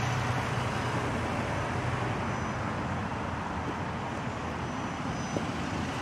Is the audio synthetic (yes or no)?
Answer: no